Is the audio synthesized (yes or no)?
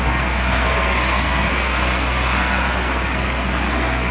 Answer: yes